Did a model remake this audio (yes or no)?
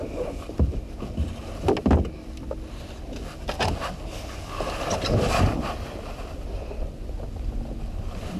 no